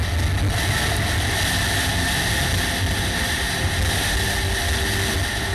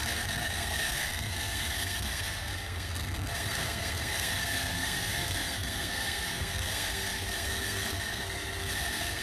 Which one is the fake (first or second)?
second